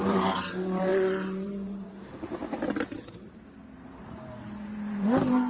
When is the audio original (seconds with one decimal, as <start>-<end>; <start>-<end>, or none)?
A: 2.4-3.5